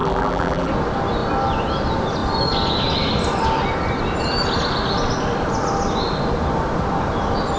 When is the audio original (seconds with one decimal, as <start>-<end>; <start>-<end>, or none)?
0.7-7.6